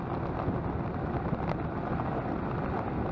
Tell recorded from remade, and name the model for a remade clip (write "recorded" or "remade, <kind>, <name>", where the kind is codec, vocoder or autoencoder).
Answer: recorded